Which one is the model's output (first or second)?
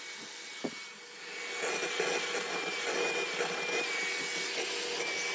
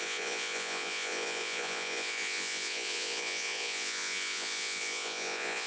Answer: second